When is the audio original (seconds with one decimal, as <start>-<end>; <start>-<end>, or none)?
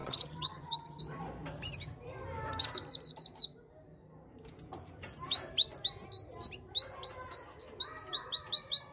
1.0-8.9